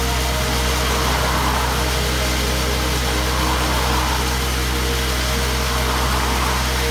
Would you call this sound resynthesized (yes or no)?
no